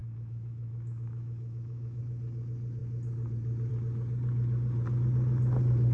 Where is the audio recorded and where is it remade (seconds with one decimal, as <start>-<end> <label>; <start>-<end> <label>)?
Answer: 0.0-2.0 remade; 2.0-5.9 recorded